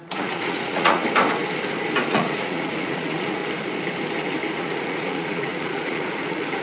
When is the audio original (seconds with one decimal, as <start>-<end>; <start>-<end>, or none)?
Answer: 1.0-2.1; 3.4-4.6